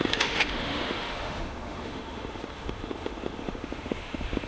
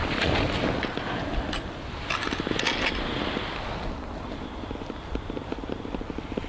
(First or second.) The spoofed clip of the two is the first